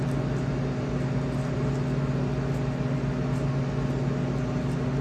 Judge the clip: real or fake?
real